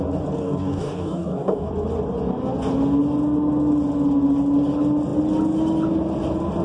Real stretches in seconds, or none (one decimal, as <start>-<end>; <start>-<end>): 0.0-0.4; 1.7-6.6